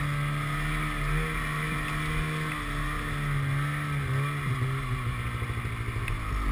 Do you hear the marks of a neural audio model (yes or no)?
no